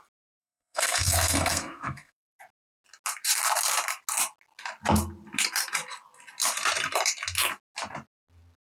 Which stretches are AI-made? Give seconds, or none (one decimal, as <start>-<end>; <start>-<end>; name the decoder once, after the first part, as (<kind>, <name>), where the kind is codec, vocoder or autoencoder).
0.4-2.4 (codec, SNAC)